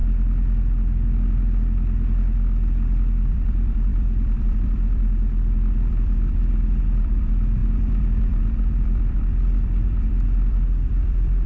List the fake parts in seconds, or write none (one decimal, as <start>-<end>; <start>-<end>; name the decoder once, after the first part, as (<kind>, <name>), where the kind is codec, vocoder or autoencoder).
3.3-11.5 (vocoder, BigVGAN v2)